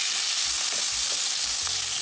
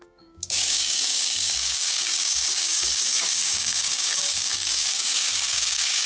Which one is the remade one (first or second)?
second